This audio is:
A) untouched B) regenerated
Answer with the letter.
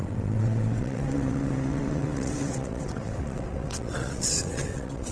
B